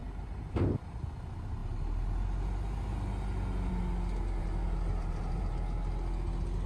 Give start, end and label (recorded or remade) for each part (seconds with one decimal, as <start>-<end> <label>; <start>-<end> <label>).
0.0-0.8 remade; 0.8-4.4 recorded; 4.4-5.5 remade; 5.5-6.7 recorded

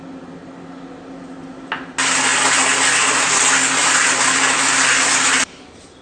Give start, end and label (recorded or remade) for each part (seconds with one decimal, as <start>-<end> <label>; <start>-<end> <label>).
0.0-6.0 recorded

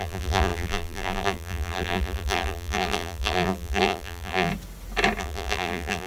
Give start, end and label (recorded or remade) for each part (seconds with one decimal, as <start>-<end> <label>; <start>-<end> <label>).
0.0-4.5 remade; 4.5-5.2 recorded; 5.2-6.1 remade